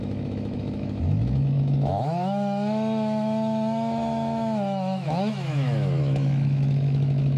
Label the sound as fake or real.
fake